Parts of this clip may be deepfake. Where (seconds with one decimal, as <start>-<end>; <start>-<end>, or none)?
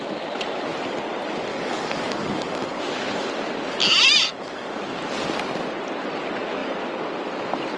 1.5-2.8; 4.3-4.8